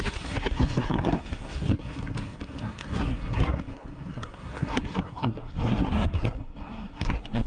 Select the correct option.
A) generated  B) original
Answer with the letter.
A